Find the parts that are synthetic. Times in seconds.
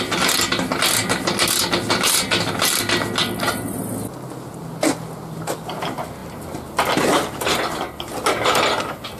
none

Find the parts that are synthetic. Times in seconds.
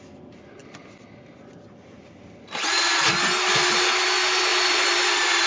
4.5-5.5